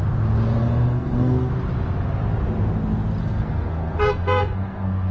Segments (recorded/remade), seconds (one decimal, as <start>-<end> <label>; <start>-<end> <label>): 0.0-0.6 recorded; 0.6-1.5 remade; 1.5-3.2 recorded; 3.2-5.1 remade